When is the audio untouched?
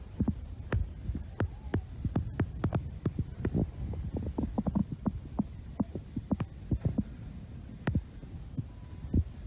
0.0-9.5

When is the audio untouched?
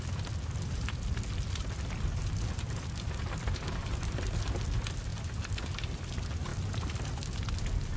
0.0-8.0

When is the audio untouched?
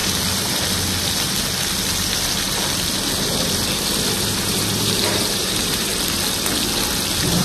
0.0-4.2; 5.9-7.4